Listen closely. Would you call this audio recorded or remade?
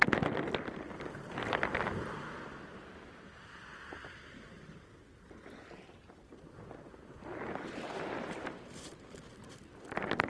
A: recorded